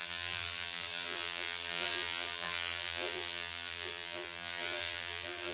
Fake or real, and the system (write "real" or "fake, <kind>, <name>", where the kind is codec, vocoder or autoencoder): fake, vocoder, BigVGAN v2